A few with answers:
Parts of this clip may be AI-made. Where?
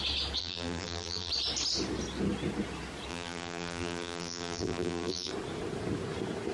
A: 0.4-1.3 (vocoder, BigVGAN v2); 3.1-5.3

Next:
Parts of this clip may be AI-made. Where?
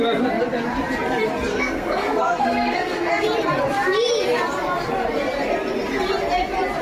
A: 1.5-3.1 (codec, SNAC)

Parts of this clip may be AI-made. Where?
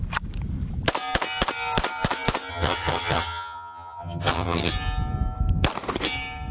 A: 2.5-4.7 (vocoder, HiFi-GAN)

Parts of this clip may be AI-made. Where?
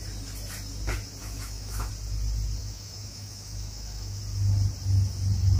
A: 1.2-1.9 (autoencoder, DAC-VAE); 2.6-4.2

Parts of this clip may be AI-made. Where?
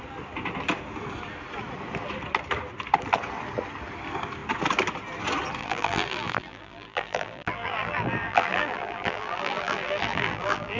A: 5.6-10.8 (vocoder, BigVGAN v2)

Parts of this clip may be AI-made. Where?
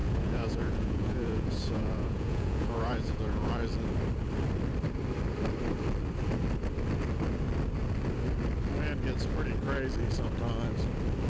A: 0.0-3.5 (vocoder, Vocos)